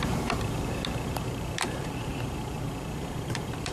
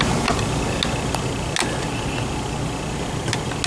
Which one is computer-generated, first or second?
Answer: first